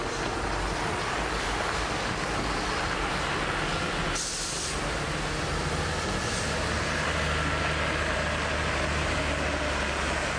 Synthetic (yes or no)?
no